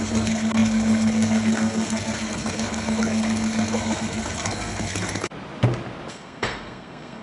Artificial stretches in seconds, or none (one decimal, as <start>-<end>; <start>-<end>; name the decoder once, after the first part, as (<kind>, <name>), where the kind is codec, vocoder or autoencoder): 0.0-5.3 (codec, SNAC); 6.1-7.2